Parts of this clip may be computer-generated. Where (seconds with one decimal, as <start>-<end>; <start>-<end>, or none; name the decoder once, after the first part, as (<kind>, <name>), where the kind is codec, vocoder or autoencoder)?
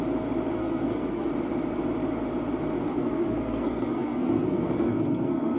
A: 0.6-1.3 (codec, SNAC); 2.9-5.6